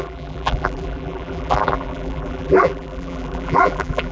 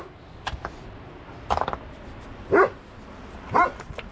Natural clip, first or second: second